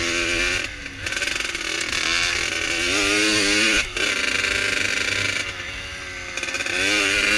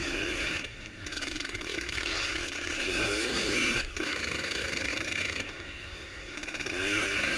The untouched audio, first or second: first